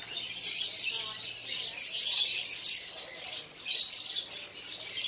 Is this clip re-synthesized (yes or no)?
no